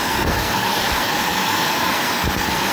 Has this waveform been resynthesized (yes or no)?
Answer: yes